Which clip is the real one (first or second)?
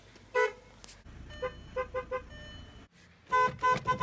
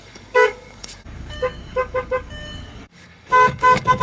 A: first